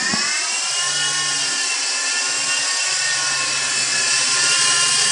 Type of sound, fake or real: real